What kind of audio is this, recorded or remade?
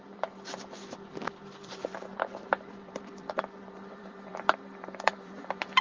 remade